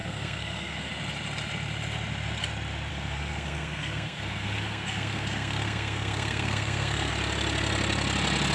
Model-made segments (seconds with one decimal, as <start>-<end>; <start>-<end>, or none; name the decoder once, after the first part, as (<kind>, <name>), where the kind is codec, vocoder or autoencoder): 0.0-0.9 (codec, SNAC); 2.9-7.1